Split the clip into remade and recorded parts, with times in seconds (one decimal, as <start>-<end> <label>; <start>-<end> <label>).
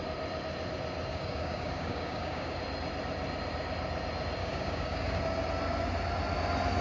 0.0-1.1 recorded; 1.1-2.6 remade; 2.6-4.4 recorded; 4.4-5.2 remade; 5.2-6.8 recorded